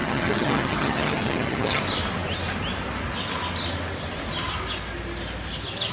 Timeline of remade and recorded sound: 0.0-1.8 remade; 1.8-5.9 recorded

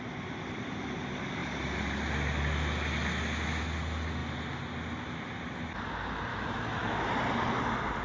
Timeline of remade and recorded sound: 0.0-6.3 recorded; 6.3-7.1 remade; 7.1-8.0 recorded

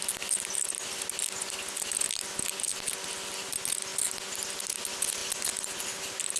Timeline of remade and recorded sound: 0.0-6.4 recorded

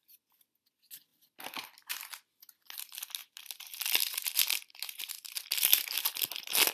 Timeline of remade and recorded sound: 0.0-6.7 recorded

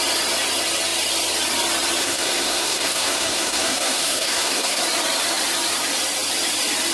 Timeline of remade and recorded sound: 0.0-2.0 recorded; 2.0-4.8 remade; 4.8-6.9 recorded

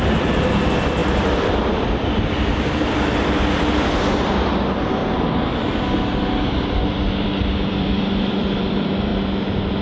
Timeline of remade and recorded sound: 0.0-5.0 remade; 5.0-6.5 recorded; 6.5-9.1 remade; 9.1-9.8 recorded

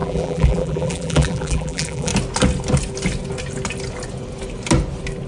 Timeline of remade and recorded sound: 0.0-2.1 remade; 2.1-5.3 recorded

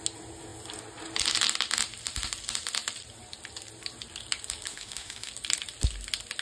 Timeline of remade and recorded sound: 0.0-4.7 recorded; 4.7-5.3 remade; 5.3-6.4 recorded